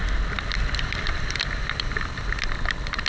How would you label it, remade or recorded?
recorded